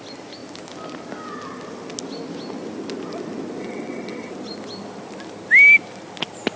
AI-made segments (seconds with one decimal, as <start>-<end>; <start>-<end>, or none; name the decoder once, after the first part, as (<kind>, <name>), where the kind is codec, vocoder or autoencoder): 3.6-4.3 (vocoder, WaveNeXt)